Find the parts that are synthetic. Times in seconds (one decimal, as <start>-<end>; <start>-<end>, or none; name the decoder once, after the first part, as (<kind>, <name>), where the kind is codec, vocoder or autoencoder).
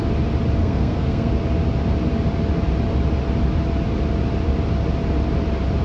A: 0.6-1.3 (codec, SNAC)